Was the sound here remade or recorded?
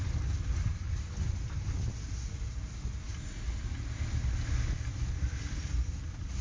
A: recorded